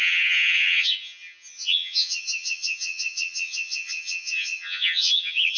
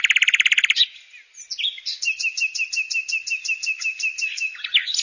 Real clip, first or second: second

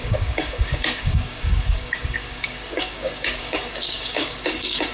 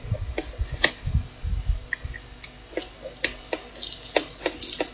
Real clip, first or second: second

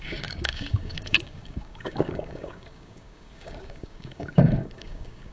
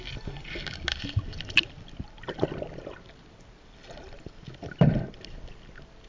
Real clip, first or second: second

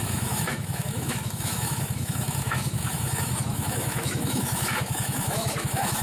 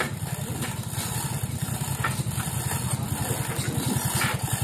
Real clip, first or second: second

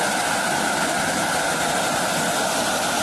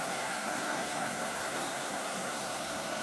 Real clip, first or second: first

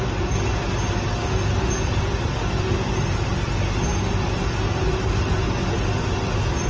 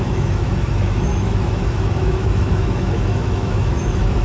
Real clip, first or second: first